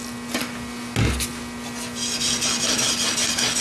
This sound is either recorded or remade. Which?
recorded